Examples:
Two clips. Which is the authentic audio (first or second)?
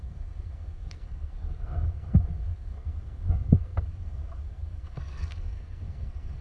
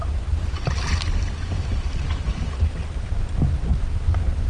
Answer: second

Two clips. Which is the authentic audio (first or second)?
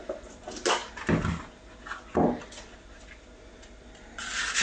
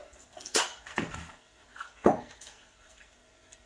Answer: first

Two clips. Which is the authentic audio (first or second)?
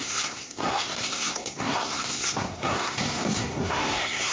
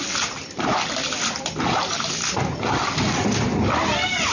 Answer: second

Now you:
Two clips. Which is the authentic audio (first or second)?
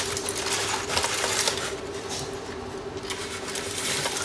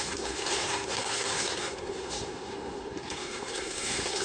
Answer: first